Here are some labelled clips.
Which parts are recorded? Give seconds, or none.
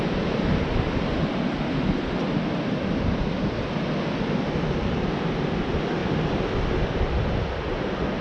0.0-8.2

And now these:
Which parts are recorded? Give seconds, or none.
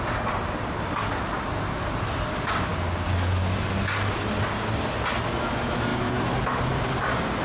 0.0-7.4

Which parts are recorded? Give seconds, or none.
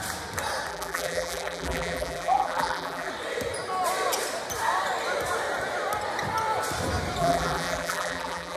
0.0-0.7; 3.1-7.2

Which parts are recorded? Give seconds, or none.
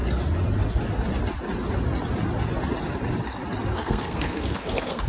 0.0-3.7